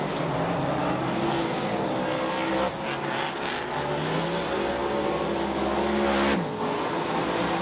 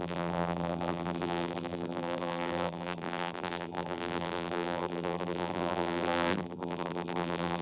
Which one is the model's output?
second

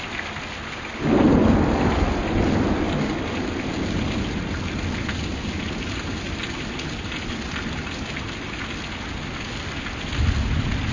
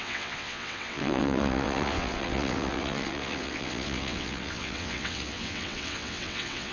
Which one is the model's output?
second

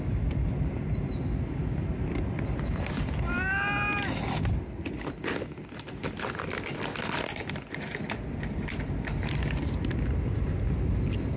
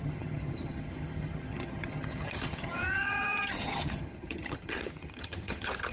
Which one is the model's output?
second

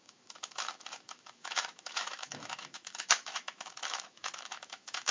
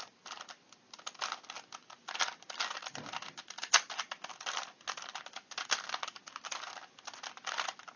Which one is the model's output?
first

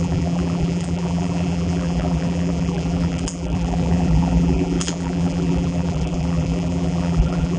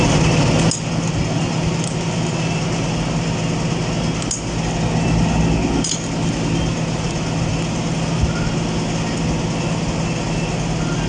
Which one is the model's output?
first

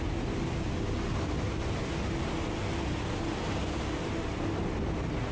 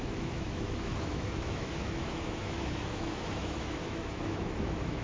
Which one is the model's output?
second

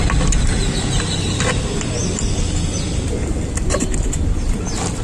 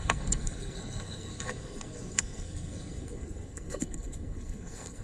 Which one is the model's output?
second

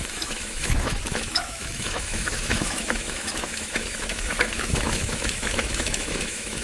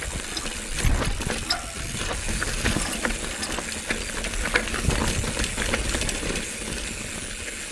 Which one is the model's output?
first